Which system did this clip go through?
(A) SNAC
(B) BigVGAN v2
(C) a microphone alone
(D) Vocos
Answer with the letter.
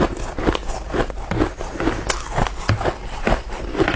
C